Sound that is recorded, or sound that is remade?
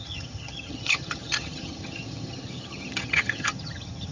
remade